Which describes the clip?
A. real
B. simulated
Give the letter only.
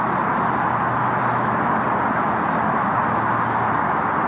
A